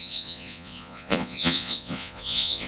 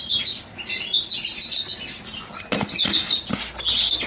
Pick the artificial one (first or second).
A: first